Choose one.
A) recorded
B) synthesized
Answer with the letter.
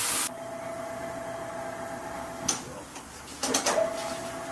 A